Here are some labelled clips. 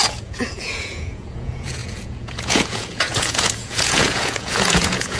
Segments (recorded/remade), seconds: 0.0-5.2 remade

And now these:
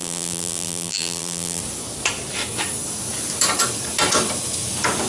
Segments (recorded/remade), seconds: 0.0-1.6 remade; 1.6-5.1 recorded

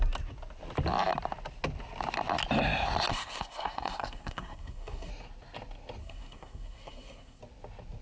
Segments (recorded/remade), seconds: 0.0-3.1 recorded; 3.1-5.1 remade; 5.1-6.0 recorded; 6.0-7.4 remade; 7.4-8.0 recorded

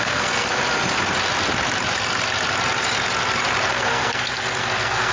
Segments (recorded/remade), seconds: 0.0-0.6 remade; 0.6-3.7 recorded; 3.7-5.1 remade

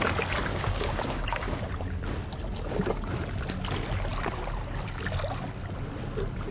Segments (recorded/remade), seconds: 0.0-0.5 recorded; 0.5-1.7 remade; 1.7-6.5 recorded

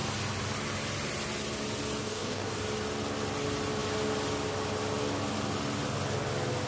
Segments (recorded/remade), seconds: 0.0-2.0 recorded; 2.0-2.6 remade; 2.6-6.7 recorded

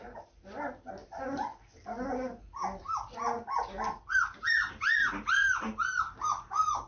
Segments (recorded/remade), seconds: 0.0-6.9 recorded

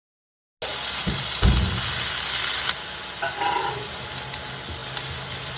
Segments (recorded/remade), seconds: 0.0-5.6 recorded